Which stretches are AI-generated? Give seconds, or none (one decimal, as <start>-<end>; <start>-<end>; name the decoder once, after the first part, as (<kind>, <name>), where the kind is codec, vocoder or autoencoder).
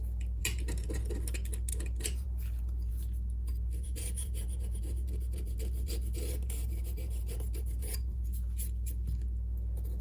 0.4-1.0 (vocoder, BigVGAN v2); 1.7-2.9; 3.5-8.3